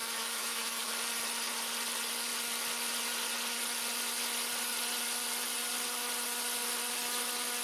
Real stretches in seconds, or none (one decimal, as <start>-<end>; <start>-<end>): 0.9-7.6